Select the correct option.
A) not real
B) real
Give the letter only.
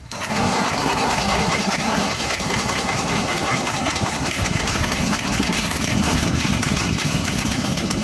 A